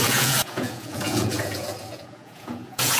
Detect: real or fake fake